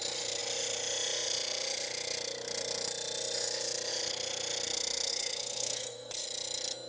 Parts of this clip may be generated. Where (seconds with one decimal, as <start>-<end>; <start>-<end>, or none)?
5.1-6.1